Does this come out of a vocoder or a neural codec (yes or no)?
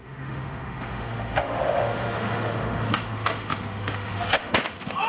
yes